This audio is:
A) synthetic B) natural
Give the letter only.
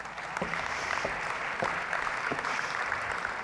A